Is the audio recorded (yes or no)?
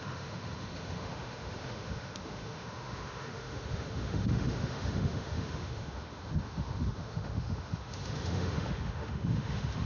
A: no